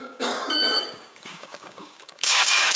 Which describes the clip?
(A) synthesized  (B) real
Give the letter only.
A